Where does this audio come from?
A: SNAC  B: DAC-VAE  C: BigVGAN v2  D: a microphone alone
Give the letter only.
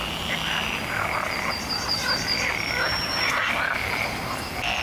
C